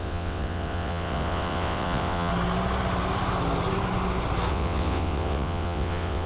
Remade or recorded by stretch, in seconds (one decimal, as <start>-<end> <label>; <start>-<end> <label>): 0.0-2.3 remade; 2.3-4.5 recorded; 4.5-6.3 remade